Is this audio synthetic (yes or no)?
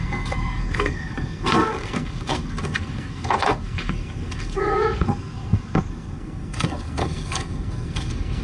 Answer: yes